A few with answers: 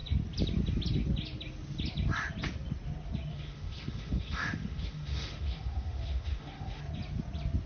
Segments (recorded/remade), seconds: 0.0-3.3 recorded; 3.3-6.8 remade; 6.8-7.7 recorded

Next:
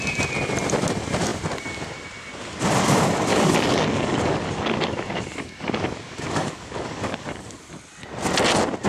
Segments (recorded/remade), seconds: 0.0-3.3 recorded; 3.3-7.7 remade; 7.7-8.9 recorded

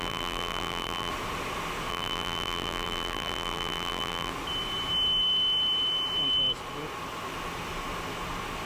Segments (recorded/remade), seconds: 0.0-1.1 remade; 1.1-1.9 recorded; 1.9-4.3 remade; 4.3-8.7 recorded

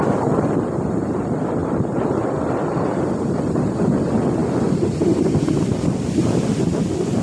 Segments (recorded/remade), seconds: 0.0-7.2 recorded

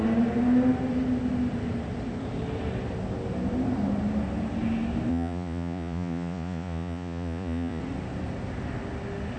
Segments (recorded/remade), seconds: 0.0-5.1 recorded; 5.1-7.8 remade; 7.8-9.4 recorded

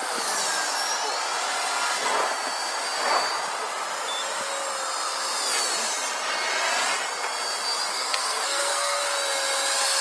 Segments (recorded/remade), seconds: 0.0-7.9 recorded; 7.9-9.0 remade; 9.0-10.0 recorded

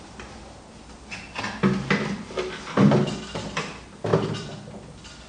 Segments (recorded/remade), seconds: 0.0-5.3 recorded